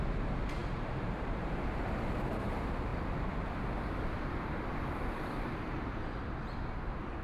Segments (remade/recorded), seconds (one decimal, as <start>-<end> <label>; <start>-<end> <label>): 0.0-2.9 remade; 2.9-4.3 recorded; 4.3-7.2 remade